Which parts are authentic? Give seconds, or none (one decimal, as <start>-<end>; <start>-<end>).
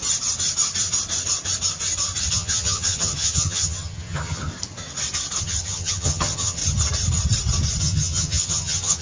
0.0-2.3; 4.5-5.4; 6.6-7.8